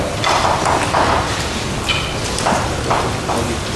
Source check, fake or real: real